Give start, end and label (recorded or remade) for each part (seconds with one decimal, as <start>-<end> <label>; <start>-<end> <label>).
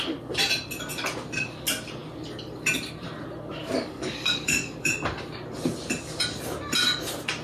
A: 0.0-3.6 recorded; 3.6-4.9 remade; 4.9-7.4 recorded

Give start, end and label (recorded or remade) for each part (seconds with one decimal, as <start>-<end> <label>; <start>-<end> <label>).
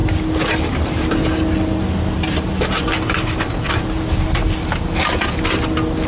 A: 0.0-6.1 recorded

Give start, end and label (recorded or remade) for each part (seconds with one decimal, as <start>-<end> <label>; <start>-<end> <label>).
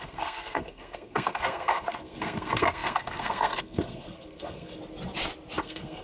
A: 0.0-4.8 remade; 4.8-5.6 recorded; 5.6-6.0 remade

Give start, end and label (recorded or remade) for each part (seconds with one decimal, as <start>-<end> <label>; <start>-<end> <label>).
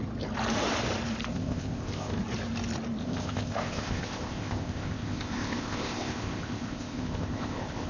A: 0.0-1.3 recorded; 1.3-2.2 remade; 2.2-3.0 recorded; 3.0-7.9 remade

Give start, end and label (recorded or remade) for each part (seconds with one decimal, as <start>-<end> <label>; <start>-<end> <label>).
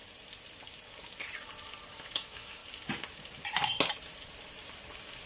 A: 0.0-1.9 recorded; 1.9-2.6 remade; 2.6-5.3 recorded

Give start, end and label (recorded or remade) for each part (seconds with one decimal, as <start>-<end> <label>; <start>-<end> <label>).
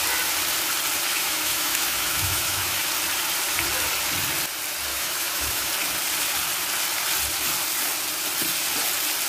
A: 0.0-1.1 recorded; 1.1-2.9 remade; 2.9-4.9 recorded; 4.9-5.7 remade; 5.7-9.3 recorded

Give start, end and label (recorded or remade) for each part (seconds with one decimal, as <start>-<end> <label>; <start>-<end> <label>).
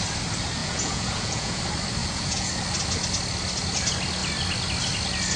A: 0.0-0.6 recorded; 0.6-1.6 remade; 1.6-2.0 recorded; 2.0-2.5 remade; 2.5-5.4 recorded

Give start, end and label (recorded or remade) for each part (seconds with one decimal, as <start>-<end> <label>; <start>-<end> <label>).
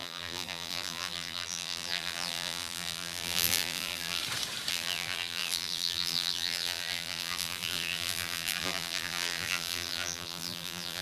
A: 0.0-4.2 remade; 4.2-4.7 recorded; 4.7-11.0 remade